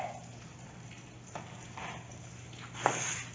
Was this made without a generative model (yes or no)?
yes